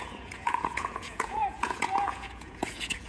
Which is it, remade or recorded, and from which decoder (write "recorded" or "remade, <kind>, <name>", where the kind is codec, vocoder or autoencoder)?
remade, vocoder, Vocos